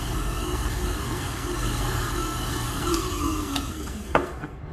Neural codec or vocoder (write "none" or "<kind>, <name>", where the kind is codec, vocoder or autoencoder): codec, SNAC